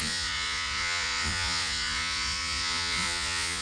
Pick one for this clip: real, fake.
fake